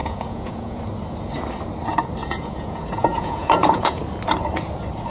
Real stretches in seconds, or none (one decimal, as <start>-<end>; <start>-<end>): 0.8-2.2; 4.0-5.1